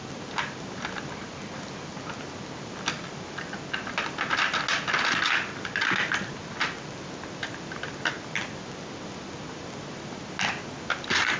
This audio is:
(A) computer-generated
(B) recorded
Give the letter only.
B